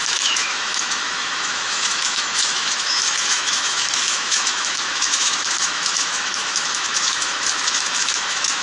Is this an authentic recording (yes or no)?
no